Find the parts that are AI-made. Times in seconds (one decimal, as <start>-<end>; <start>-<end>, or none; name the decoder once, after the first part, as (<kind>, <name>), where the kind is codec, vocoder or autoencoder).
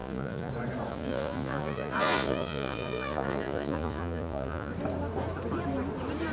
0.0-0.5 (vocoder, Vocos); 0.9-4.7